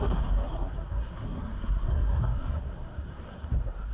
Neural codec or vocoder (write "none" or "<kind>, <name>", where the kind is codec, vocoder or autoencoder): codec, SNAC